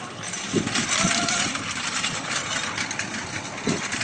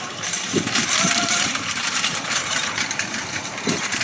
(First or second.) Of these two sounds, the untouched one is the first